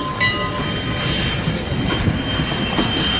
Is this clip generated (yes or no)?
no